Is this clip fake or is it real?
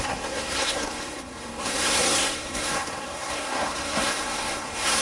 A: fake